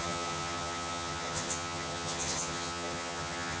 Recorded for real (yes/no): no